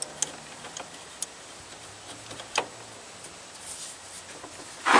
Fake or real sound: real